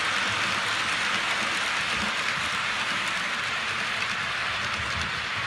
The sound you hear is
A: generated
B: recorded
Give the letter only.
B